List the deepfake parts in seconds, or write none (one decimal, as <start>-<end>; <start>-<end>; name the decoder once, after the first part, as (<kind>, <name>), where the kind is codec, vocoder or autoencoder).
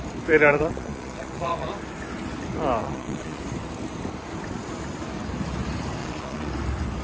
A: 0.5-1.7 (vocoder, Vocos); 2.8-3.4; 6.0-6.5